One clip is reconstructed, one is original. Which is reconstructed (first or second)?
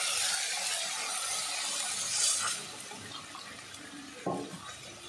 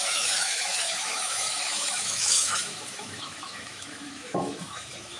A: second